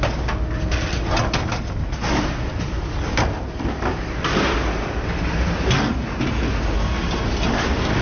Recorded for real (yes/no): yes